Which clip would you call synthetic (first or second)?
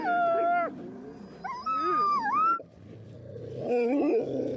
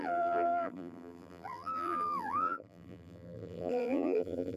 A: second